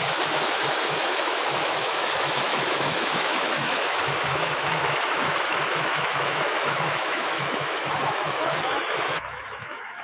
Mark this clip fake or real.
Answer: fake